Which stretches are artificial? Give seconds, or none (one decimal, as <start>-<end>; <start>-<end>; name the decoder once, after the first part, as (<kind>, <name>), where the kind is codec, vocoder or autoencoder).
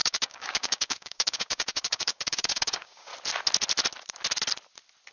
0.0-3.1 (codec, DAC)